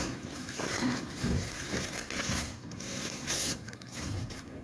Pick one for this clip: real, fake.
fake